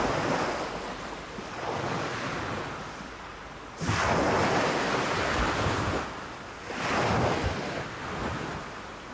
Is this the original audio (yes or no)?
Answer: yes